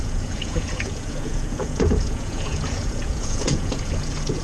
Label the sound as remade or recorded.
remade